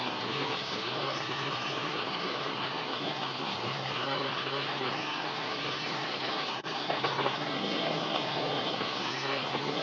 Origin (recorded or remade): remade